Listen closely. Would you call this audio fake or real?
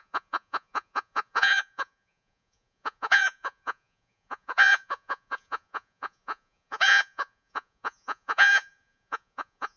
fake